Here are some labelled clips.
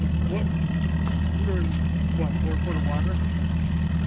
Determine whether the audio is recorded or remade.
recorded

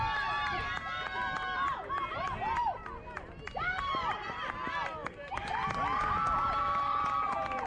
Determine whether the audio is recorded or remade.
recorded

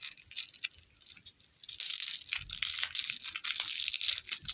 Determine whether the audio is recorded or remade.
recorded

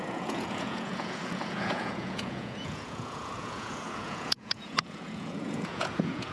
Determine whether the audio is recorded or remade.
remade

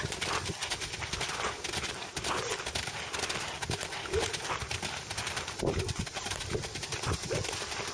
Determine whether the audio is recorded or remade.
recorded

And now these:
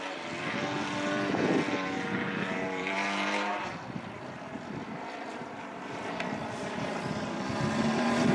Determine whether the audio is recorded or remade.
remade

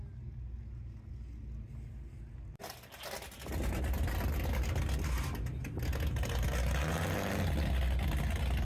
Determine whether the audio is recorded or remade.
recorded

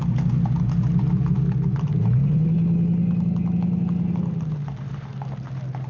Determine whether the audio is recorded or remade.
recorded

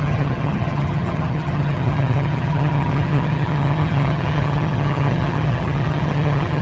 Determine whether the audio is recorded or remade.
remade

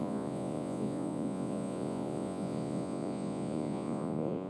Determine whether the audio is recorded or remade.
remade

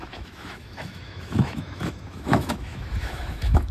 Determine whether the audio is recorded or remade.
remade